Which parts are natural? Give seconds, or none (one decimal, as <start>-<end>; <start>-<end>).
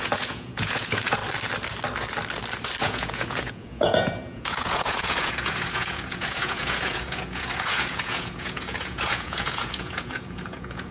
1.2-2.8